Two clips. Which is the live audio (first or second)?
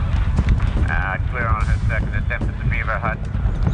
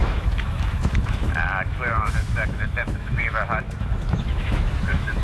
first